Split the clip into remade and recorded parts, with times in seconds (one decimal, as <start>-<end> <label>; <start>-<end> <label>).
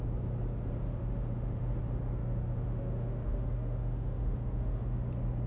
0.0-1.0 recorded; 1.0-1.8 remade; 1.8-2.2 recorded; 2.2-5.1 remade; 5.1-5.5 recorded